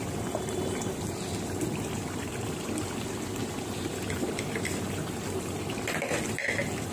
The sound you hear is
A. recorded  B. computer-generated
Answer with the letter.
B